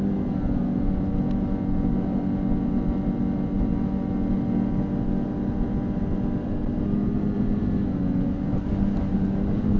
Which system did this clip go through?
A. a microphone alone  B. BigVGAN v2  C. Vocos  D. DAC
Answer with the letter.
A